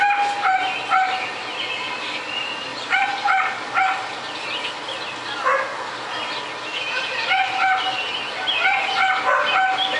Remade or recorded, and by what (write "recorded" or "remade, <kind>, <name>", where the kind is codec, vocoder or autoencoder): recorded